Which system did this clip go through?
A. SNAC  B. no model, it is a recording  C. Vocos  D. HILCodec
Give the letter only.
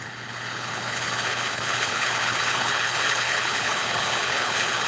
D